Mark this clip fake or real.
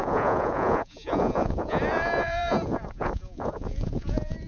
fake